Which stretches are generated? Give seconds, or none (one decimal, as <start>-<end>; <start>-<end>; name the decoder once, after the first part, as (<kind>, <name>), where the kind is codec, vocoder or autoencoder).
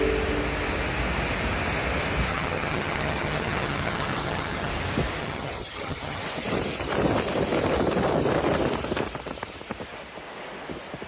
2.3-4.7 (vocoder, HiFi-GAN); 5.2-6.2